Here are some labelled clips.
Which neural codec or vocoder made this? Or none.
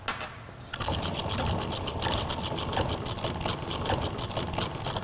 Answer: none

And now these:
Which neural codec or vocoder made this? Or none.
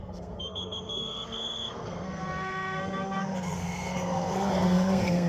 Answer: codec, SNAC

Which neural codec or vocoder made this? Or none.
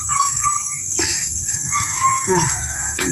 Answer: codec, SNAC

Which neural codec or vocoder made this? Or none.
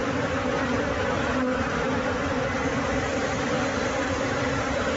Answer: vocoder, BigVGAN v2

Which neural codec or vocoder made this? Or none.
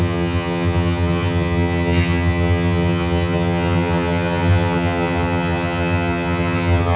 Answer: vocoder, HiFi-GAN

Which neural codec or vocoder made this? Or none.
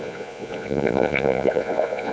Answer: vocoder, Vocos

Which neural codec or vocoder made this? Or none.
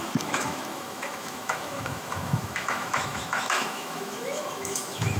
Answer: autoencoder, DAC-VAE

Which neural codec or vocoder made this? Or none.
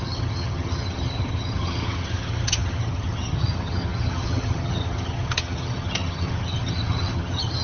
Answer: vocoder, HiFi-GAN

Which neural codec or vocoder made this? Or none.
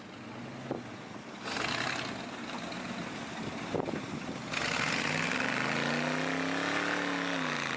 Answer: none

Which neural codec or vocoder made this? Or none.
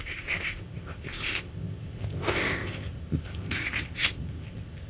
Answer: codec, ZipCodec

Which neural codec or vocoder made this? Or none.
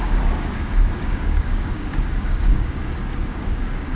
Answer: codec, DAC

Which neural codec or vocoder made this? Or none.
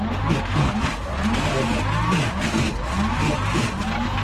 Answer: none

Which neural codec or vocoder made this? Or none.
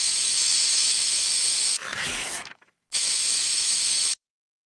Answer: autoencoder, DAC-VAE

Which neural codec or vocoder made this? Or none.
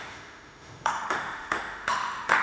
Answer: autoencoder, DAC-VAE